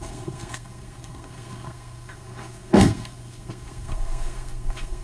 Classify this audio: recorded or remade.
remade